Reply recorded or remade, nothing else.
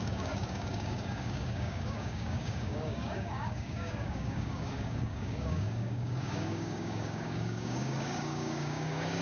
remade